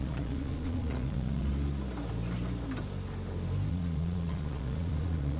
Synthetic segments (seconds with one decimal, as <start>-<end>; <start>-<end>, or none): 0.0-1.5; 3.7-5.4